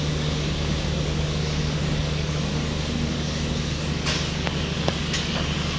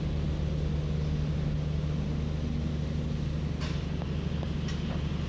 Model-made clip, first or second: first